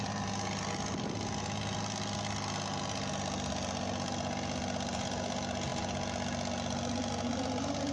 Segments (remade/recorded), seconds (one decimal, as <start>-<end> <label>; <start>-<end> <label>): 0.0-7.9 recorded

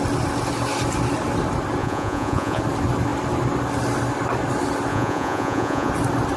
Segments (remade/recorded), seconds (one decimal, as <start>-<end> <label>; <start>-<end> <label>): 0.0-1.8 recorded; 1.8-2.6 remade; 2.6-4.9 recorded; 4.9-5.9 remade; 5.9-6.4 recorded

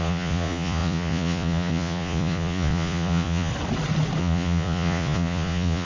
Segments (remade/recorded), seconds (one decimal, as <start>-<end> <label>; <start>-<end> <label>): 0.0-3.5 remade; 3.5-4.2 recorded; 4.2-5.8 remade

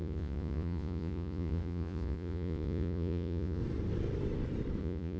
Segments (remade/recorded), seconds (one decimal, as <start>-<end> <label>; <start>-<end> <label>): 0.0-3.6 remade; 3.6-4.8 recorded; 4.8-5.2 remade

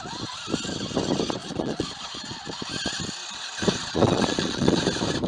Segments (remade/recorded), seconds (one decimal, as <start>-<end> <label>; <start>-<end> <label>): 0.0-1.4 recorded; 1.4-2.5 remade; 2.5-3.8 recorded; 3.8-4.8 remade; 4.8-5.3 recorded

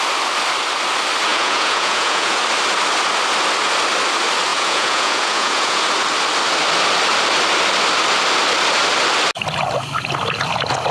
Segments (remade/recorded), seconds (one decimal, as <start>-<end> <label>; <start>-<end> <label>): 0.0-1.3 recorded; 1.3-2.4 remade; 2.4-4.5 recorded; 4.5-5.8 remade; 5.8-10.9 recorded